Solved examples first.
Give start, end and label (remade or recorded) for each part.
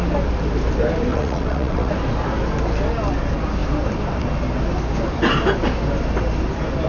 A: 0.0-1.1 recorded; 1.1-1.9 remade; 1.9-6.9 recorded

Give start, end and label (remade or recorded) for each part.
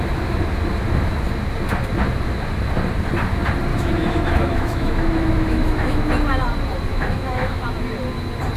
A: 0.0-3.7 recorded; 3.7-6.1 remade; 6.1-6.9 recorded; 6.9-7.6 remade; 7.6-8.6 recorded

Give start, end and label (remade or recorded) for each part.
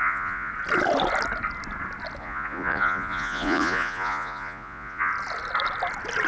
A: 0.0-0.5 remade; 0.5-2.2 recorded; 2.2-5.1 remade; 5.1-6.3 recorded